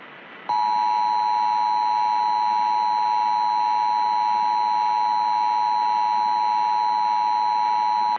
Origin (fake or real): real